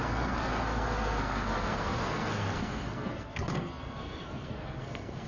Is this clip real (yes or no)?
no